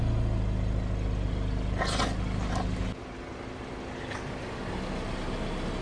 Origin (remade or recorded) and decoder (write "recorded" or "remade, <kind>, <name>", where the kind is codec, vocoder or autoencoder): recorded